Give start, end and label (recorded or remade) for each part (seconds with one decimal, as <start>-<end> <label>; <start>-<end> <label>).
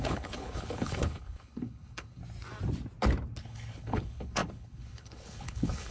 0.0-2.2 remade; 2.2-3.4 recorded; 3.4-5.9 remade